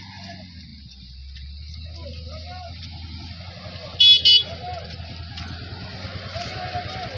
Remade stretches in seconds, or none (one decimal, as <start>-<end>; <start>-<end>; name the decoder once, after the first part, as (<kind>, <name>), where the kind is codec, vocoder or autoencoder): none